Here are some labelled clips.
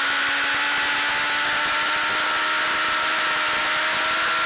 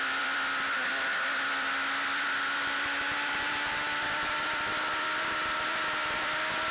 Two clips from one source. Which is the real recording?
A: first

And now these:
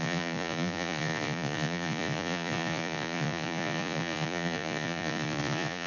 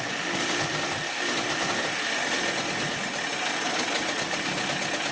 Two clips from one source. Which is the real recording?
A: second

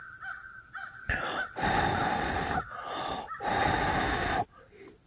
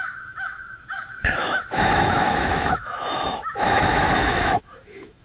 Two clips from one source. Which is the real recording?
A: first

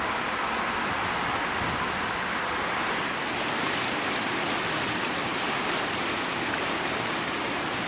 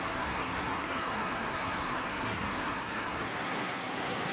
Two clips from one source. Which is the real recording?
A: first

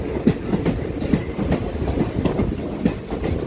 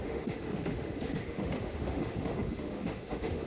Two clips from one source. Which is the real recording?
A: first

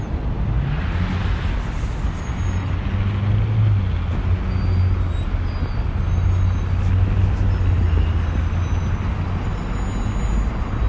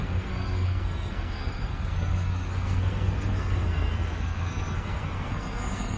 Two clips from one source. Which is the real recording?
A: first